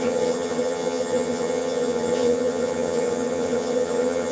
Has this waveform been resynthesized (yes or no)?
yes